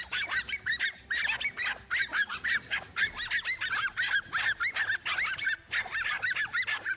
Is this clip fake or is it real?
real